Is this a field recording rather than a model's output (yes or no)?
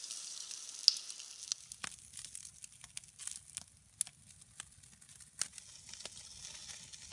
yes